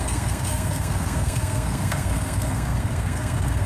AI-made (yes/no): yes